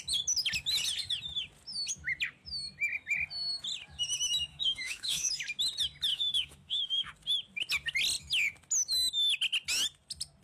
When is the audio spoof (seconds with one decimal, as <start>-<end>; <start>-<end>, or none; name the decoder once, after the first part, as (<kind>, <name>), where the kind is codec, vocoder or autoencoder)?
4.5-5.3 (autoencoder, DAC-VAE); 6.1-7.1